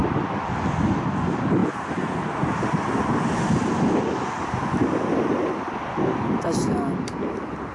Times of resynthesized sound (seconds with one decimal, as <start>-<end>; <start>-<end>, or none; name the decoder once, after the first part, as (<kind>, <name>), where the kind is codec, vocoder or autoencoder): none